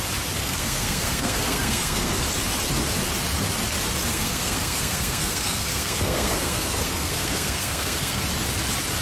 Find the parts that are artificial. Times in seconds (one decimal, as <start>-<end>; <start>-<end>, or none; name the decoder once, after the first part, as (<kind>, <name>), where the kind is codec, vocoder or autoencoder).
0.4-2.2 (codec, SNAC); 4.1-8.2